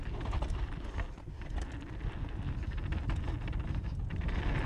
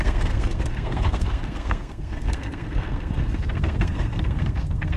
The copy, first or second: second